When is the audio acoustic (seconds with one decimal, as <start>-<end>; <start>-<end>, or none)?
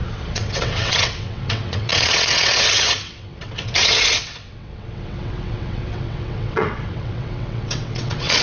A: none